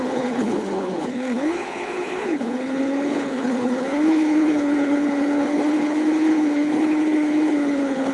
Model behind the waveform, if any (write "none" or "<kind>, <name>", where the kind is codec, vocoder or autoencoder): codec, HILCodec